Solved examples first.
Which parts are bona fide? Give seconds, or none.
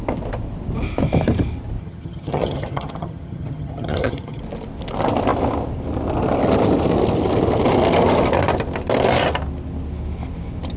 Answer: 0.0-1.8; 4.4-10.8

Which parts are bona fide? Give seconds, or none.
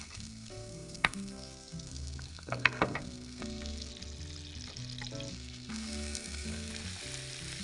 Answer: 3.9-5.3; 6.7-7.6